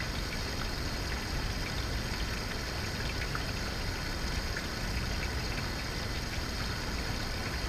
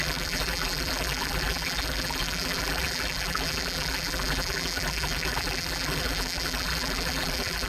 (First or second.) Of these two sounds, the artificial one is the second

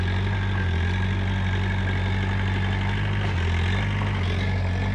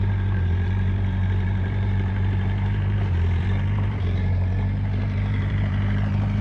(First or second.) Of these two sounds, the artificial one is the second